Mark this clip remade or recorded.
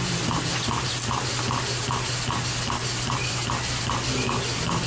recorded